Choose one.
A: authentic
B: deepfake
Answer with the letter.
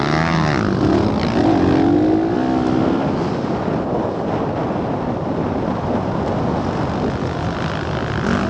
A